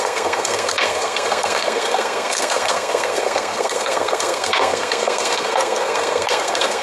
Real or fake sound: fake